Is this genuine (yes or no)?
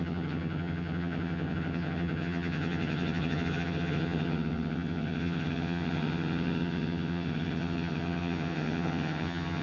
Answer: no